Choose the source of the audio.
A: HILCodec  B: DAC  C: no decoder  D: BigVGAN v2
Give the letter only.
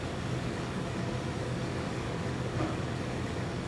B